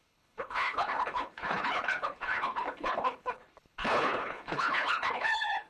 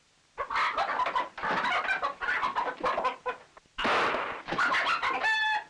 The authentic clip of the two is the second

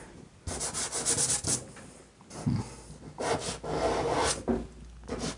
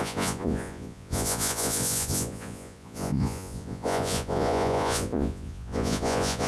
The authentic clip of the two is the first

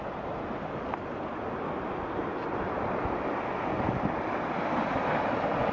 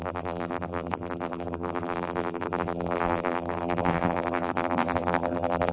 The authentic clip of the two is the first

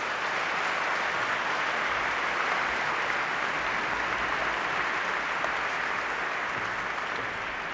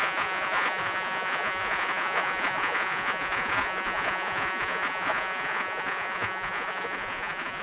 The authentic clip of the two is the first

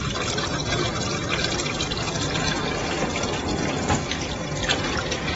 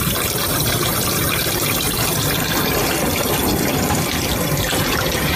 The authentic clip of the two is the first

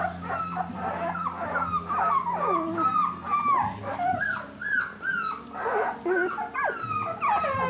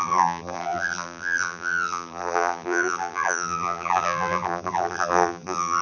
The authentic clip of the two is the first